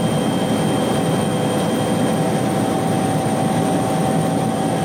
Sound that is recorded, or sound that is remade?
recorded